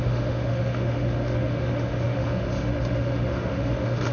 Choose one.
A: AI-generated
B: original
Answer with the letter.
A